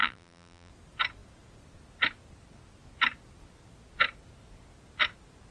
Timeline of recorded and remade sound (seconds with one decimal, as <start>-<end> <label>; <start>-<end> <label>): 0.0-0.7 remade; 0.7-5.5 recorded